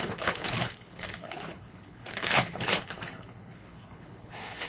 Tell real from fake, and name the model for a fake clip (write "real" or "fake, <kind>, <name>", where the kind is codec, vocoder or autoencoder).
fake, codec, HILCodec